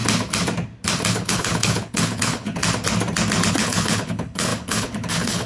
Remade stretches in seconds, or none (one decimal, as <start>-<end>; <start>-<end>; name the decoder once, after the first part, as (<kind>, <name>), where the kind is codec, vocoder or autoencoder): 1.1-2.6 (codec, HILCodec); 3.5-5.5